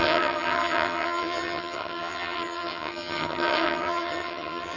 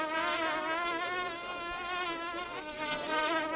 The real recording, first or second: second